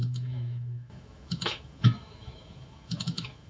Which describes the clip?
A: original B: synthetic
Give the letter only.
B